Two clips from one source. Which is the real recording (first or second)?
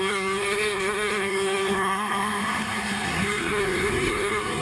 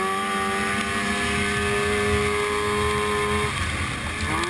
second